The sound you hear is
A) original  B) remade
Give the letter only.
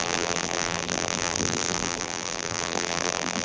B